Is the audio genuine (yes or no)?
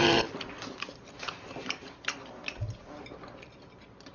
yes